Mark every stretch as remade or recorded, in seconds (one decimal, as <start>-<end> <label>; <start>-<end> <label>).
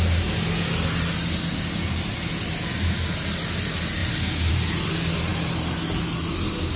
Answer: 0.0-6.8 recorded